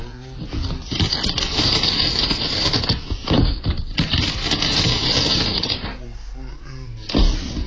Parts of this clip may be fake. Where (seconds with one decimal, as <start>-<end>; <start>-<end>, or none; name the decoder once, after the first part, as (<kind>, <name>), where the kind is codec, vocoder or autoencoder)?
none